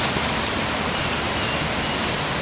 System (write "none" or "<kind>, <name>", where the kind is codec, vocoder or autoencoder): none